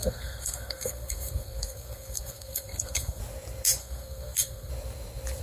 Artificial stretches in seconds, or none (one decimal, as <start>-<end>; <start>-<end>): 0.0-3.2; 3.8-4.7